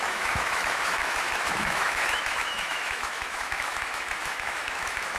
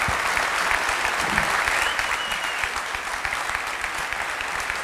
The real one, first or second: second